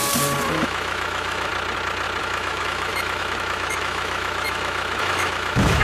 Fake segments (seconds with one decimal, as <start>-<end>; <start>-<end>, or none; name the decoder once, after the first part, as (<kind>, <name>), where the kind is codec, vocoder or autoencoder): 0.5-1.5 (autoencoder, DAC-VAE); 2.2-5.8